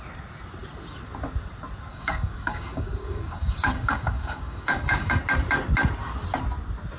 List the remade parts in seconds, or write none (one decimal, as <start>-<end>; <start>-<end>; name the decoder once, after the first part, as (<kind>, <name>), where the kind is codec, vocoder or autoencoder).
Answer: 1.9-5.2 (codec, DAC)